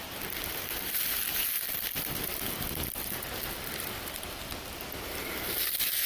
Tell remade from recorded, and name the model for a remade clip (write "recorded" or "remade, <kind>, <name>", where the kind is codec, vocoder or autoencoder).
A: recorded